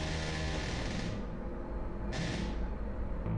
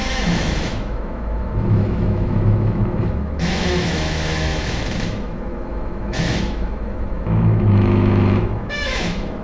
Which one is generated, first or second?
second